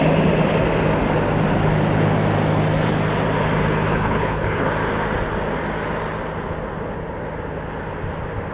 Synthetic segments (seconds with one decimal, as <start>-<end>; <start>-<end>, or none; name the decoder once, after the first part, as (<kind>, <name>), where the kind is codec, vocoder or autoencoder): 3.9-4.7 (codec, HILCodec)